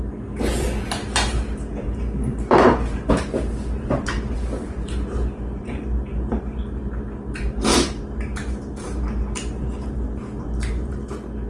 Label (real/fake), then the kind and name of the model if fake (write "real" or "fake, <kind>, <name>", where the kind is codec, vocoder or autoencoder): fake, vocoder, BigVGAN v2